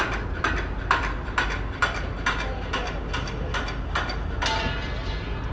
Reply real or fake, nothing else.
real